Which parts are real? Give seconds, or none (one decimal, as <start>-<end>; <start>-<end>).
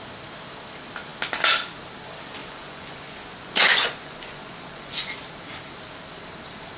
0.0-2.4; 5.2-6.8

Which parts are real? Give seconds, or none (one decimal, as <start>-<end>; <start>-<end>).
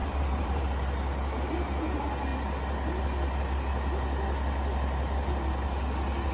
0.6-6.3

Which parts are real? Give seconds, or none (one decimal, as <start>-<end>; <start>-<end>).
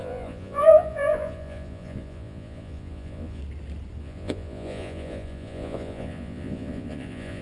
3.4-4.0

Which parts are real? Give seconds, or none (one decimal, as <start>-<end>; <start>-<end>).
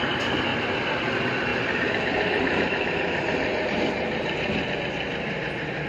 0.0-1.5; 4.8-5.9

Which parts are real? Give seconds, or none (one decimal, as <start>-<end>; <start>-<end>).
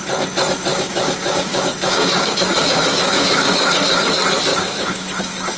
0.0-0.7; 4.1-4.5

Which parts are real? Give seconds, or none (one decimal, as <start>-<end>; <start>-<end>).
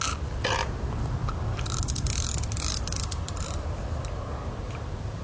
0.0-5.2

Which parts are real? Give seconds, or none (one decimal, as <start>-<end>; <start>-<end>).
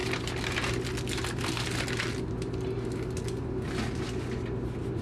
0.0-5.0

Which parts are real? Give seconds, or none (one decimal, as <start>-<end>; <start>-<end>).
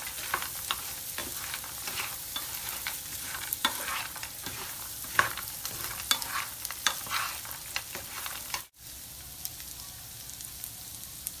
0.0-1.2; 5.5-11.4